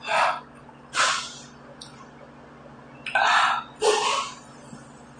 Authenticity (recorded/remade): recorded